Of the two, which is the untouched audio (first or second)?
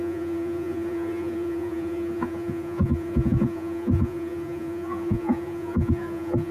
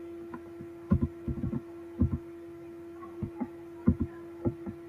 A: second